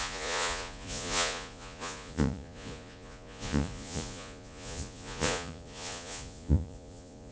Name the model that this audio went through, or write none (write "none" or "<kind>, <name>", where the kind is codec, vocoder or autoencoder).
vocoder, Vocos